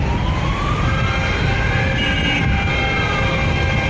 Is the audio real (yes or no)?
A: yes